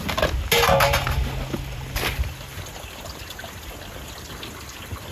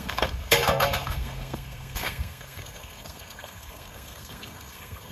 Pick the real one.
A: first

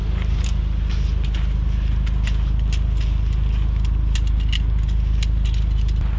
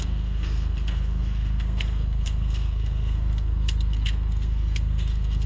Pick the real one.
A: first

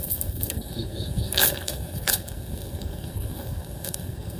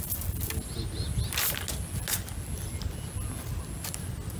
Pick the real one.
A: second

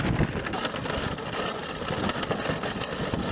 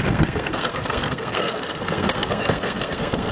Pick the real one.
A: first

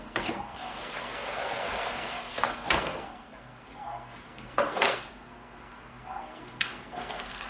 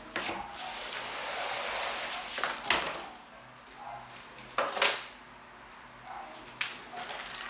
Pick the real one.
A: second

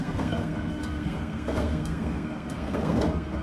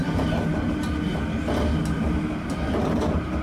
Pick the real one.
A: second